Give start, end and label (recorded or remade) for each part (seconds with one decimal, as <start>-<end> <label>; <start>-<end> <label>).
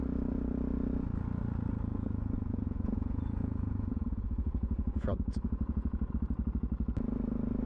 0.0-1.9 recorded; 1.9-6.1 remade; 6.1-7.7 recorded